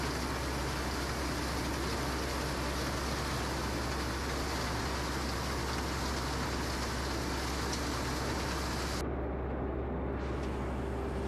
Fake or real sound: real